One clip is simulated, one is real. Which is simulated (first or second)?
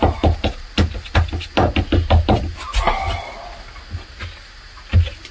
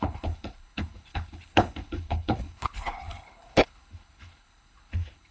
second